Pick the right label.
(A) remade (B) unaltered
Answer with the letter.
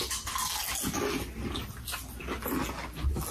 B